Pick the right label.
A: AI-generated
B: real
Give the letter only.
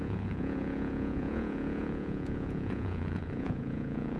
A